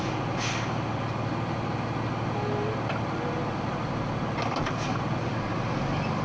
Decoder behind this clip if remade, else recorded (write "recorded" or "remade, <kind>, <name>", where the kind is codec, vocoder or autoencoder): recorded